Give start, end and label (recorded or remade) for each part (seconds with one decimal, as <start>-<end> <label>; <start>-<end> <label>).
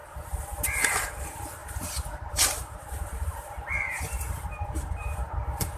0.0-1.6 recorded; 1.6-4.9 remade; 4.9-5.8 recorded